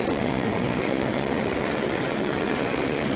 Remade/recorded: remade